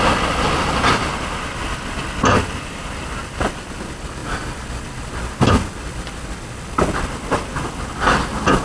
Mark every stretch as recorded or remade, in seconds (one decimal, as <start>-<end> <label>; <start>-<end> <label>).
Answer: 0.0-8.6 recorded